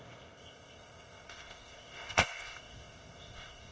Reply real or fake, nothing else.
fake